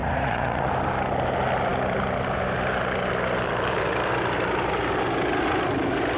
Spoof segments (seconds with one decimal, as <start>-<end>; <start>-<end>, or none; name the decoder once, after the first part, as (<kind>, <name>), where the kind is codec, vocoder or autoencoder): 0.0-0.7 (vocoder, Vocos)